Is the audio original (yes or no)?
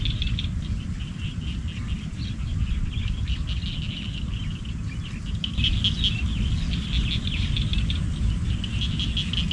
yes